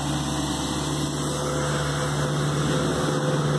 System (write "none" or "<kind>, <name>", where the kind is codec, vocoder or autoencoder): none